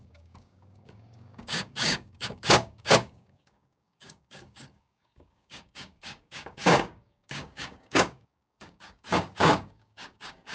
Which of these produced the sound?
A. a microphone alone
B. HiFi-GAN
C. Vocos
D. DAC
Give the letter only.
D